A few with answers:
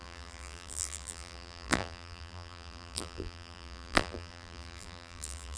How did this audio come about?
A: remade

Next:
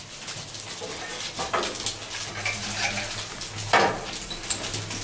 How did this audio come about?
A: recorded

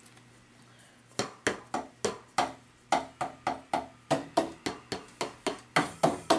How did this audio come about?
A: recorded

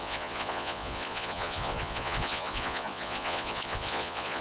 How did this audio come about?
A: remade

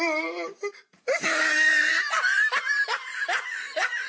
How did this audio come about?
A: remade